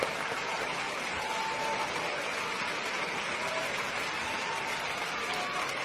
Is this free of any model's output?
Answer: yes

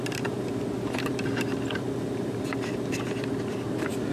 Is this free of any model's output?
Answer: no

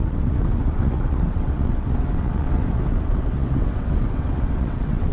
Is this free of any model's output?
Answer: no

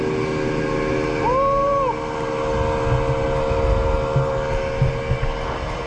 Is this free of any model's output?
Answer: yes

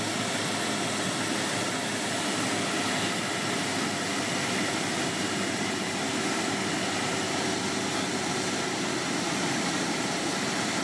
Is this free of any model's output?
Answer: yes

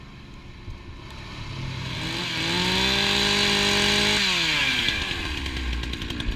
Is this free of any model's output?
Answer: yes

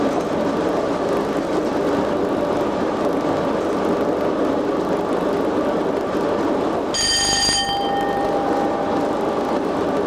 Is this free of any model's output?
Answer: yes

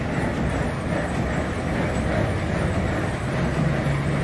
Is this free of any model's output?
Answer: yes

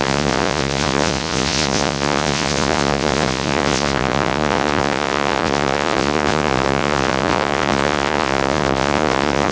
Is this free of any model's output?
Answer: no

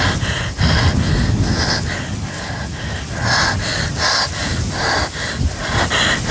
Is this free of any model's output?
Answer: yes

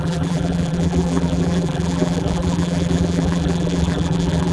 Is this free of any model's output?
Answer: no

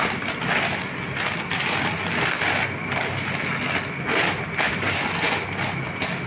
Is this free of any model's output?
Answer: yes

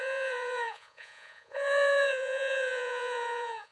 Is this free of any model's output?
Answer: no